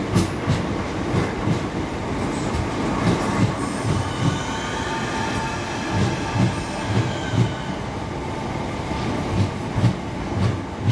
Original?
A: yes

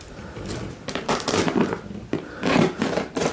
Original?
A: yes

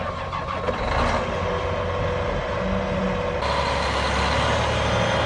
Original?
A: yes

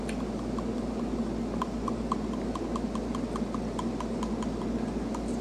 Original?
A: yes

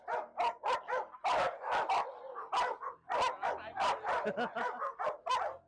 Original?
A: yes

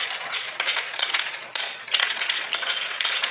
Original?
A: no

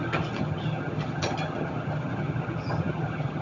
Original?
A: no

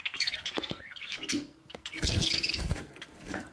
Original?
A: no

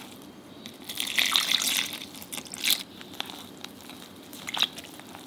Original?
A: yes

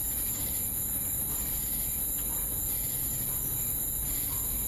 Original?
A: no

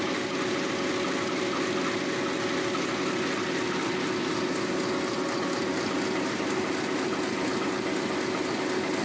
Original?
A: yes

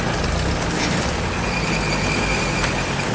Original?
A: yes